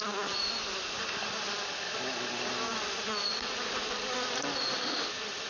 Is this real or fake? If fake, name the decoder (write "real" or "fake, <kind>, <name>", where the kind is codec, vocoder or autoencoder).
real